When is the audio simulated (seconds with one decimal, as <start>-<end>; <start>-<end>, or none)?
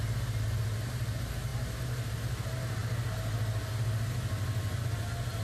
none